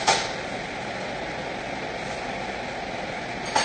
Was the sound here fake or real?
real